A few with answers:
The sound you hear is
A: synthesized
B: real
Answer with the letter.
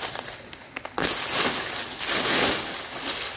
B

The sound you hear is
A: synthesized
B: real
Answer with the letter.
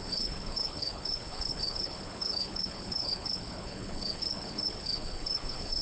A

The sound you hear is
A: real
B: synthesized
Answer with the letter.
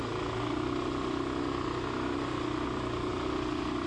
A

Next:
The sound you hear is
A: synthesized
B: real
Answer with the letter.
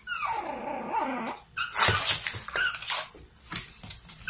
B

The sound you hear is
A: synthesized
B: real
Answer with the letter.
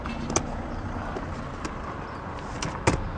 B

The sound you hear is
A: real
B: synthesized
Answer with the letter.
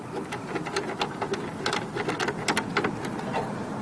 A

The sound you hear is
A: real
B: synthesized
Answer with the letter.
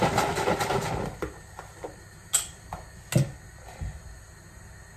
A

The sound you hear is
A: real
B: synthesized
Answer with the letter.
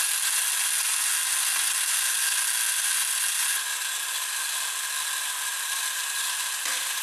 A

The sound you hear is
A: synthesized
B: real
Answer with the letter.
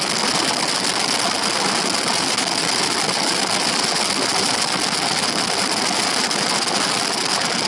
B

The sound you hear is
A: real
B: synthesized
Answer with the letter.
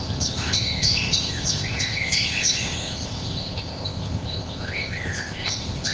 B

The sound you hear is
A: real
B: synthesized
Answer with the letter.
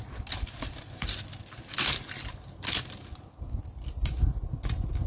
A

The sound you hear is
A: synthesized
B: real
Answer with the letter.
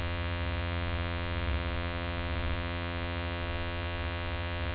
A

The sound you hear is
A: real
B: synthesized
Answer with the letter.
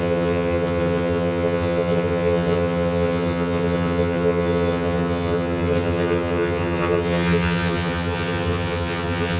B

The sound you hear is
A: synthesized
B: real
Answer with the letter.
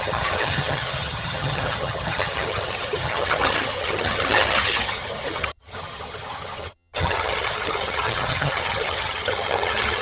A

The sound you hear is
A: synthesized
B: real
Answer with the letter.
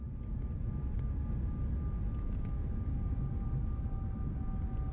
B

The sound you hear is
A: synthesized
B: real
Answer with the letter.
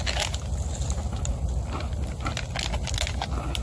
B